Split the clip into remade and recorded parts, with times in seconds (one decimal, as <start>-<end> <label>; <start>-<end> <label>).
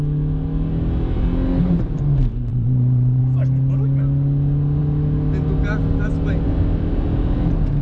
0.0-2.5 recorded; 2.5-3.2 remade; 3.2-7.8 recorded